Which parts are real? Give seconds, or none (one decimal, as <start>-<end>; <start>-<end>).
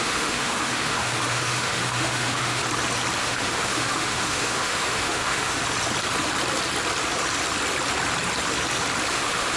2.6-3.2; 5.6-9.1